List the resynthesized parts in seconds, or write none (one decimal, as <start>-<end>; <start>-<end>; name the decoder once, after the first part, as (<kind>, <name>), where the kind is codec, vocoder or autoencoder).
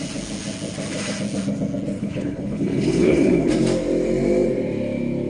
2.0-3.5 (codec, HILCodec)